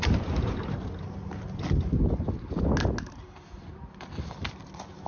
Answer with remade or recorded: recorded